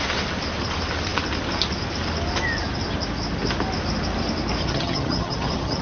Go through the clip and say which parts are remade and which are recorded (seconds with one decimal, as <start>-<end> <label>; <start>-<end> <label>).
0.0-4.6 recorded; 4.6-5.8 remade